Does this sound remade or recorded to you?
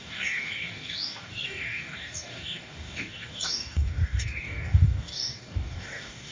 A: remade